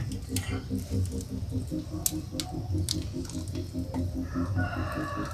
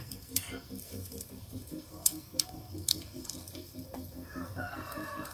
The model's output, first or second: second